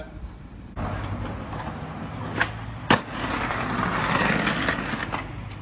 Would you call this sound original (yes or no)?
yes